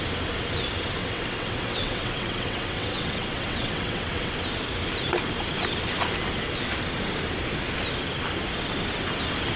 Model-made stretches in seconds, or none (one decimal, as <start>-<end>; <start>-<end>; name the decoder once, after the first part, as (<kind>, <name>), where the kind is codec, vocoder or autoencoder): 1.0-4.3 (vocoder, WaveNeXt)